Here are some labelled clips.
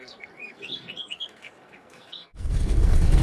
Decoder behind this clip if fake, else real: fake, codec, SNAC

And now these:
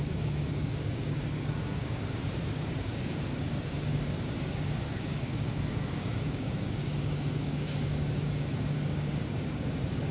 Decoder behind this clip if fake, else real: fake, codec, DAC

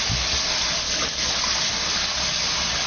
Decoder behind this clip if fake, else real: real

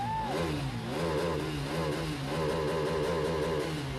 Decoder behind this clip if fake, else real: real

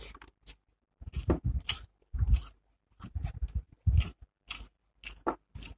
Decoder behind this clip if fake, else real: real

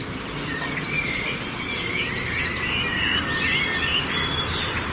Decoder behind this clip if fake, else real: real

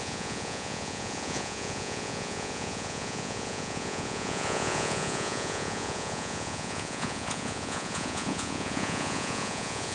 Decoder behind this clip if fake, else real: fake, vocoder, Vocos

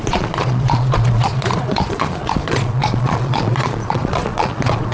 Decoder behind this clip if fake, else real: fake, vocoder, Vocos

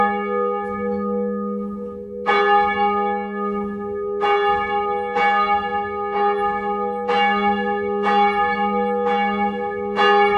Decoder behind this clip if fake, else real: real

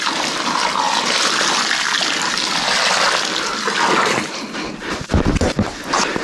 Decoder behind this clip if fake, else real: real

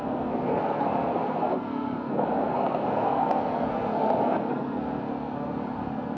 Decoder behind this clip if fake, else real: fake, codec, SNAC